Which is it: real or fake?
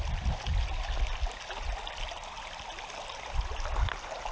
real